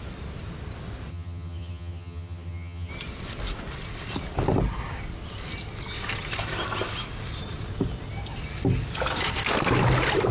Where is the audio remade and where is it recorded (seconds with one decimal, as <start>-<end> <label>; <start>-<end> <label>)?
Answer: 0.0-1.1 recorded; 1.1-2.9 remade; 2.9-10.3 recorded